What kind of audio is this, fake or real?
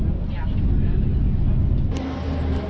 real